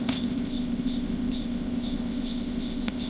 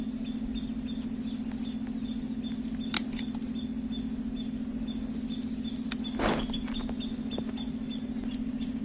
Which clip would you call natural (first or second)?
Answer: second